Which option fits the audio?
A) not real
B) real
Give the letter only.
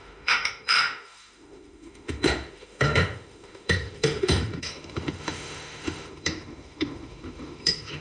A